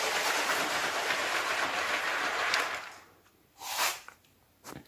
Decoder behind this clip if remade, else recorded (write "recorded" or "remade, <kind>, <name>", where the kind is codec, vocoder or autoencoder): remade, vocoder, BigVGAN v2